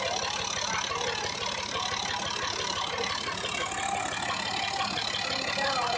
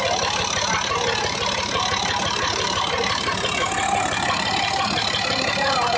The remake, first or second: second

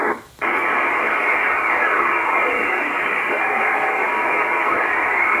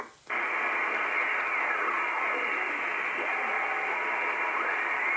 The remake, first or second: first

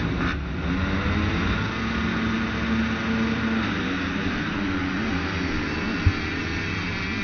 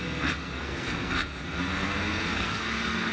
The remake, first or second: second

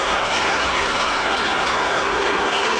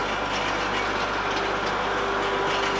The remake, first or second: first